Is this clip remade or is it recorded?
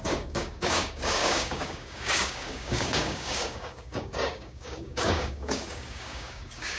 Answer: remade